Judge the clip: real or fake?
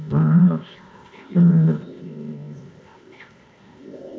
fake